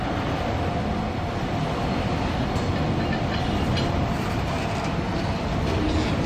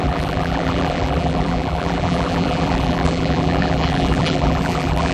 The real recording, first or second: first